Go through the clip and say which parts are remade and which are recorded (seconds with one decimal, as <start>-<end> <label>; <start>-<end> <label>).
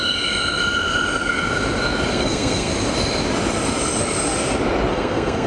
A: 0.0-2.1 recorded; 2.1-2.7 remade; 2.7-4.9 recorded; 4.9-5.5 remade